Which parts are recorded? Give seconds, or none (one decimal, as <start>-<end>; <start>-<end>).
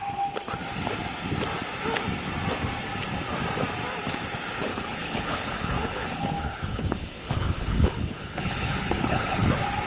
0.0-4.7; 9.5-9.9